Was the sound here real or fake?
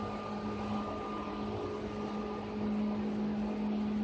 real